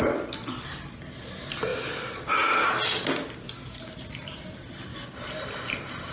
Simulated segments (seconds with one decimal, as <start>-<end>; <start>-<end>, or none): 0.0-1.7; 4.0-6.1